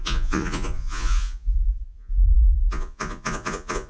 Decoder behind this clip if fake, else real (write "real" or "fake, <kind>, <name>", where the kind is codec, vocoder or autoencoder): fake, vocoder, Vocos